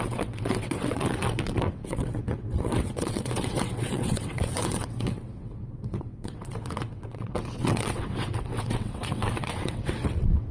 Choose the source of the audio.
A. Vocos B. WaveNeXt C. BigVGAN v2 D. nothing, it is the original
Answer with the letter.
B